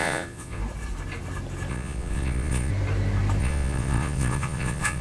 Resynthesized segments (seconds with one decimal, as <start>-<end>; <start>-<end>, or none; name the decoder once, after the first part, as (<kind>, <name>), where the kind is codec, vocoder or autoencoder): 0.0-0.6 (vocoder, Vocos); 1.7-2.7; 3.4-5.0